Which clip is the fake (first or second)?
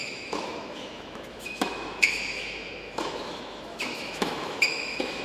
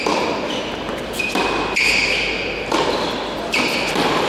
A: first